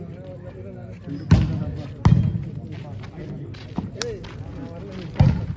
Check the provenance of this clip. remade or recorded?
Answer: recorded